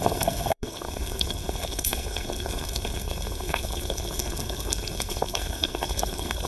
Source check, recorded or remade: remade